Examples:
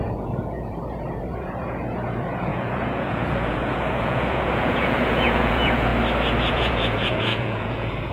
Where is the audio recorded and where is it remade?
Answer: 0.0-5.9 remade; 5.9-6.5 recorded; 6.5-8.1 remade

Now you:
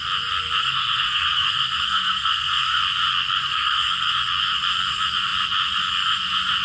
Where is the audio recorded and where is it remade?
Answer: 0.0-0.6 recorded; 0.6-2.8 remade; 2.8-3.5 recorded; 3.5-4.1 remade; 4.1-6.6 recorded

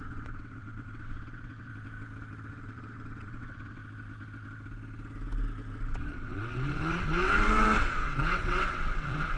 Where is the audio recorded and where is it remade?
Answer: 0.0-1.7 remade; 1.7-2.5 recorded; 2.5-3.8 remade; 3.8-5.9 recorded; 5.9-9.4 remade

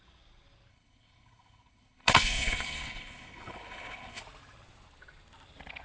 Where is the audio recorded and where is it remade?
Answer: 0.0-0.7 recorded; 0.7-4.2 remade; 4.2-5.8 recorded

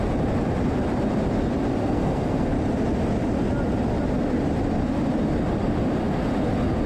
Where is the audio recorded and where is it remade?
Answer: 0.0-1.8 recorded; 1.8-2.5 remade; 2.5-6.9 recorded